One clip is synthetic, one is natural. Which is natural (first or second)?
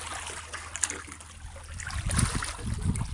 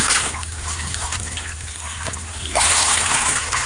first